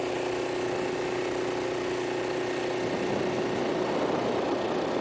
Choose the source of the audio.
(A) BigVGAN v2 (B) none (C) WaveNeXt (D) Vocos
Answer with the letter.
B